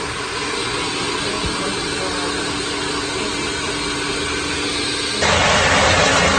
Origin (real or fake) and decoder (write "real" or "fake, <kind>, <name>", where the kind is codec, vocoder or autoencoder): real